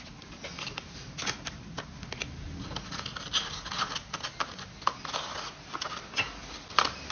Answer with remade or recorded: recorded